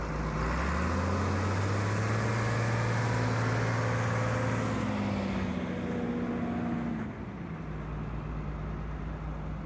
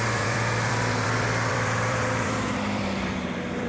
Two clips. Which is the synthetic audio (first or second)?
second